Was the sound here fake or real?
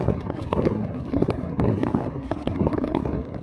fake